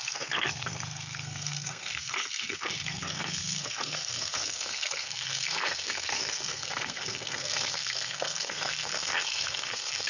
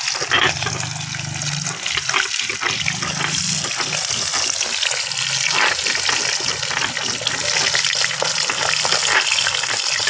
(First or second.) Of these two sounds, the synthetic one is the first